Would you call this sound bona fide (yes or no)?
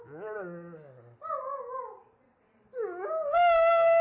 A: yes